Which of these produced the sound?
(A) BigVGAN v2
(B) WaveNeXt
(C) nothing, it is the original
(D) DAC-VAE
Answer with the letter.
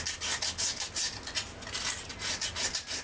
C